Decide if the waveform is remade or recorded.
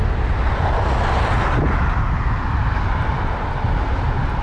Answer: recorded